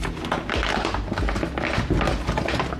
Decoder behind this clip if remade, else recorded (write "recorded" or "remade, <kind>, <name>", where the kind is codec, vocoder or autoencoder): recorded